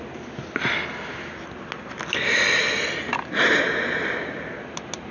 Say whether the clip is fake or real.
real